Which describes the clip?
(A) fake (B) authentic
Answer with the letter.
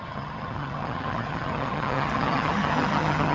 A